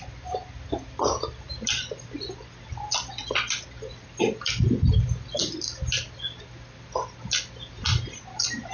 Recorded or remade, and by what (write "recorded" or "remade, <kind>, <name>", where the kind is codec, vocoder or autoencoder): recorded